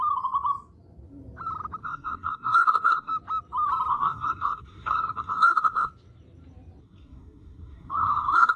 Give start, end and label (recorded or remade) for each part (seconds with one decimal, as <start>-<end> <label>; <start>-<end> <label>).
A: 0.0-1.8 recorded; 1.8-3.1 remade; 3.1-3.9 recorded; 3.9-5.9 remade; 5.9-6.8 recorded; 6.8-8.6 remade